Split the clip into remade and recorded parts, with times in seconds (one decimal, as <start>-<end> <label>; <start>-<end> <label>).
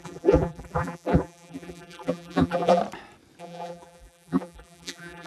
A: 0.0-2.8 remade; 2.8-3.4 recorded; 3.4-5.3 remade